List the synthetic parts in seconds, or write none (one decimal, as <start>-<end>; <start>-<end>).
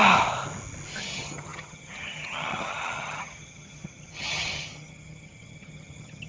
1.0-6.3